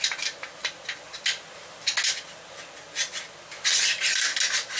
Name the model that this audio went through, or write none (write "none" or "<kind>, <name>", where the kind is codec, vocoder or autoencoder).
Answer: none